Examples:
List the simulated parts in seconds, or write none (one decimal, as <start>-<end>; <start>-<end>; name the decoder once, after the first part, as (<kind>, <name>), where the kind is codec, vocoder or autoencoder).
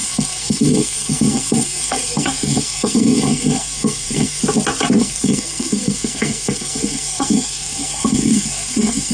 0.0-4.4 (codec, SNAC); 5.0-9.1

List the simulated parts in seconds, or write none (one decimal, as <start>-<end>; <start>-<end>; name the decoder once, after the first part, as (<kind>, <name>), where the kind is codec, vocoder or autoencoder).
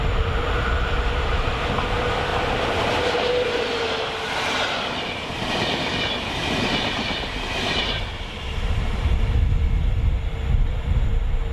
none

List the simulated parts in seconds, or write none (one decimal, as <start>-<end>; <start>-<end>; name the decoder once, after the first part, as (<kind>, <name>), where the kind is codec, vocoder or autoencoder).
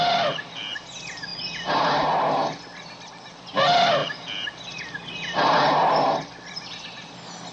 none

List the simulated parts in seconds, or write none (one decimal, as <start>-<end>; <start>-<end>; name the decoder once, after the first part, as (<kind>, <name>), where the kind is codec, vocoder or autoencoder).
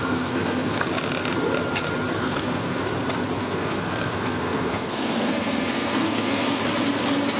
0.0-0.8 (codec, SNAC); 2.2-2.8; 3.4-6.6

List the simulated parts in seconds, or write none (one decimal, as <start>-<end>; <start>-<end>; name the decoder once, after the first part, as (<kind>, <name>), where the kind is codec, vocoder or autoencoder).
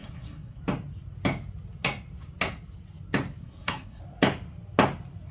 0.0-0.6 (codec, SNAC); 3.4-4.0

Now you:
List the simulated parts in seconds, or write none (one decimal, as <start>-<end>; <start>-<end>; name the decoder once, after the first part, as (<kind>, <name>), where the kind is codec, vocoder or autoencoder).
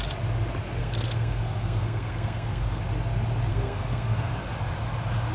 0.8-2.8 (codec, SNAC); 3.5-4.3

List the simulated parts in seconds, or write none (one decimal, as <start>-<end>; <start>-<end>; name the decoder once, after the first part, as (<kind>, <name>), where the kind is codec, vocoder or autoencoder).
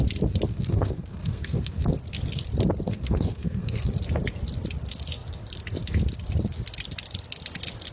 0.5-1.9 (codec, SNAC); 2.9-3.9